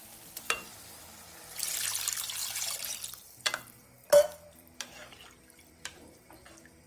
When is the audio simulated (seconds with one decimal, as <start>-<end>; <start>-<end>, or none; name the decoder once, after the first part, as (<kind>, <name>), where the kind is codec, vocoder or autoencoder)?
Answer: 0.0-2.4 (vocoder, BigVGAN v2); 3.2-6.9